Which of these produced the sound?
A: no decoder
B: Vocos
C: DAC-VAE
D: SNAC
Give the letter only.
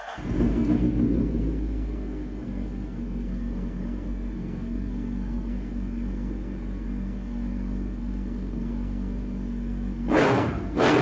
D